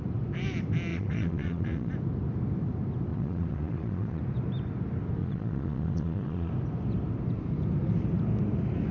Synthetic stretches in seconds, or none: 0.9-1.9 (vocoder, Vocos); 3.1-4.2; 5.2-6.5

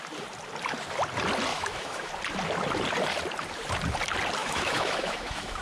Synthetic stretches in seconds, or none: 1.5-2.1 (autoencoder, DAC-VAE); 4.4-5.6